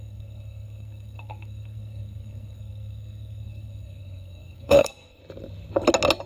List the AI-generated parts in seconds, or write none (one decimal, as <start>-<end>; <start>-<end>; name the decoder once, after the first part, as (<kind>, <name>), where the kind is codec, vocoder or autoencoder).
0.0-5.2 (codec, SNAC)